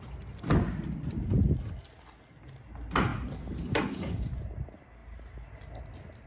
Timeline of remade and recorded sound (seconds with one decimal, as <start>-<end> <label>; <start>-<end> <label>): 0.0-3.1 recorded; 3.1-4.2 remade; 4.2-6.3 recorded

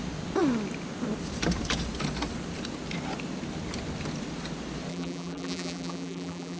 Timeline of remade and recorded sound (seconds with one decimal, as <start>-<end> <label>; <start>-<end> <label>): 0.0-4.9 recorded; 4.9-6.6 remade

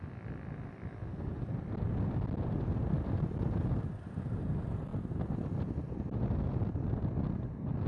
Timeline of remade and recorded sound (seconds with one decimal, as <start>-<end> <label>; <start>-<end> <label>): 0.0-7.9 recorded

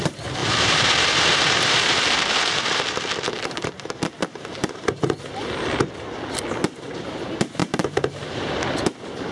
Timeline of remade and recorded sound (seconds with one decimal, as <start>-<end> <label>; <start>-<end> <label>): 0.0-0.4 recorded; 0.4-5.2 remade; 5.2-7.6 recorded; 7.6-8.6 remade; 8.6-9.3 recorded

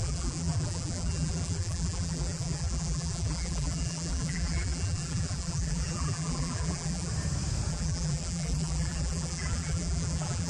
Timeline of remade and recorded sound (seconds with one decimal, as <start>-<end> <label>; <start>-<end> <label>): 0.0-7.1 remade; 7.1-7.7 recorded; 7.7-10.5 remade